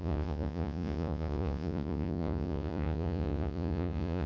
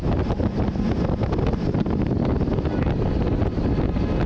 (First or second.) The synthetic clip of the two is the first